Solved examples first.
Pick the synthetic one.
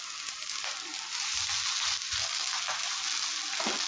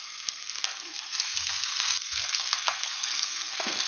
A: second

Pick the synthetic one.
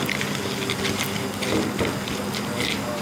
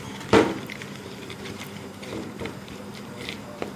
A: second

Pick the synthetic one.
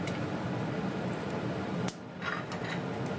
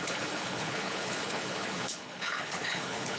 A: second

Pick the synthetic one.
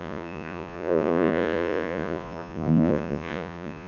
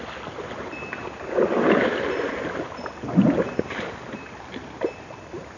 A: first